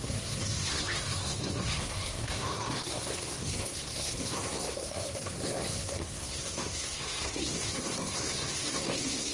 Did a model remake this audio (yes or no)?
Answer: yes